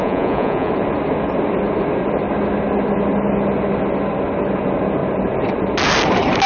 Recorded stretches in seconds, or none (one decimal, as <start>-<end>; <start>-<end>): 0.7-6.5